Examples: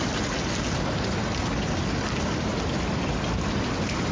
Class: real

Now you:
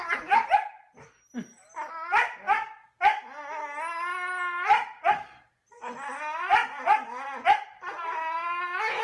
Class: real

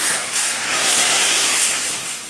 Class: fake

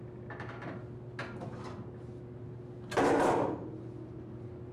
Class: real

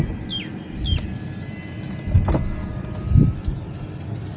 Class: real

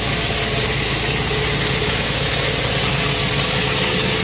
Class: real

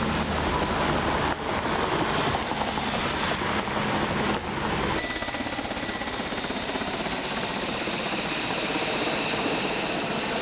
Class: real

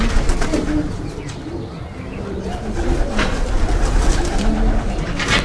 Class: real